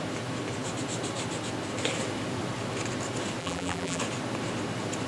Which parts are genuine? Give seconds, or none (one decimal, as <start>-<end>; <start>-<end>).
0.0-3.4; 4.0-5.1

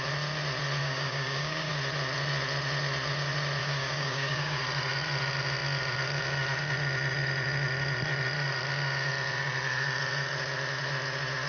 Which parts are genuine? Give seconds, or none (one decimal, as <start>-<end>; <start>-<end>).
0.0-0.8; 1.7-3.6; 4.6-11.5